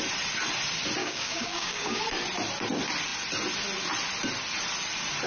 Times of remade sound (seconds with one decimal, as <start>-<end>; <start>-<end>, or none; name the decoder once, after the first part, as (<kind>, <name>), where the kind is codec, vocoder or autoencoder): 1.0-2.0 (codec, DAC)